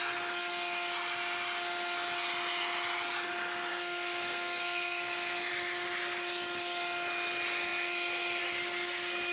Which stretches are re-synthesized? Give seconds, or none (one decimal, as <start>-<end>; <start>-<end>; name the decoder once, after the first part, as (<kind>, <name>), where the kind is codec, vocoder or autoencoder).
3.7-5.5 (codec, SNAC)